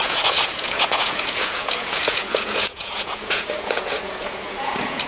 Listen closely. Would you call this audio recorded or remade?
remade